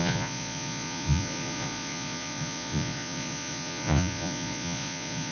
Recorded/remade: remade